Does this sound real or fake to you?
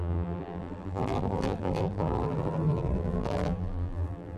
fake